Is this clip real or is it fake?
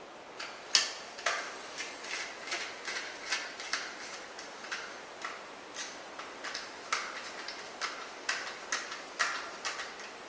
real